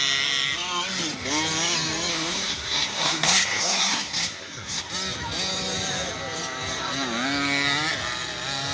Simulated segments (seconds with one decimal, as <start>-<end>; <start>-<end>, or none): 2.1-4.9